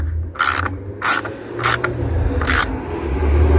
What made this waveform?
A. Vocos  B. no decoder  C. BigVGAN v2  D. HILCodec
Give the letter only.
B